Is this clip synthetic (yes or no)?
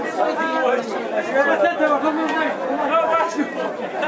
no